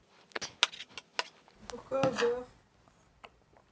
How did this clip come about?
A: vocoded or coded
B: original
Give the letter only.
B